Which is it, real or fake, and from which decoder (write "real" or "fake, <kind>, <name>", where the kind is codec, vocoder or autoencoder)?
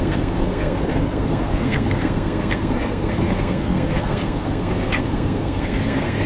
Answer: fake, codec, SNAC